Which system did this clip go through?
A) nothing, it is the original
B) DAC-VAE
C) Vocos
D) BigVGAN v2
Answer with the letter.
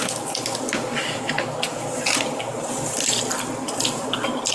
A